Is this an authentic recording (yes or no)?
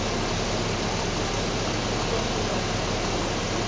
yes